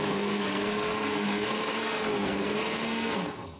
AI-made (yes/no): yes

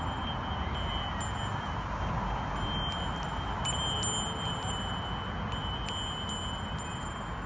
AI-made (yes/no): no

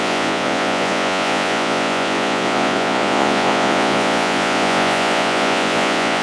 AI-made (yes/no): yes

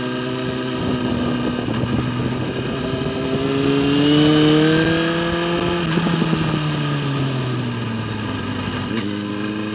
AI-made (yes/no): no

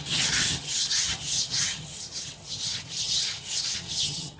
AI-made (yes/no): yes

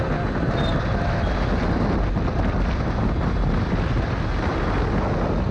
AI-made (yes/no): no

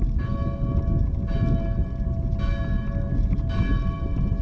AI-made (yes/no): no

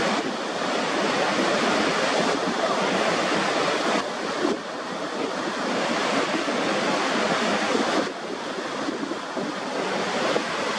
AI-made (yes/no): no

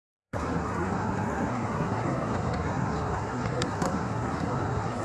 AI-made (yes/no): yes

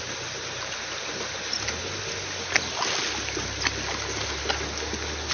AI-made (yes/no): no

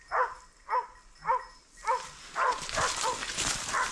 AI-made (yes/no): no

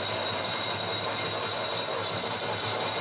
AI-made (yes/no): no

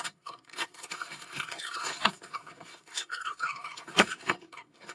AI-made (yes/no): yes